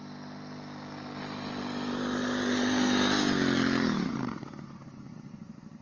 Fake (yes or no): no